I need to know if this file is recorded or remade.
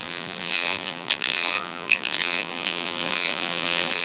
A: remade